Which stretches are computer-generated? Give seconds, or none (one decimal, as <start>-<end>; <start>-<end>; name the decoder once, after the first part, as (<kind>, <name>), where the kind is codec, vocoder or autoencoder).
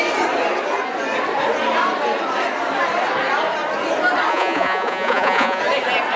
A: 4.3-5.6 (vocoder, Vocos)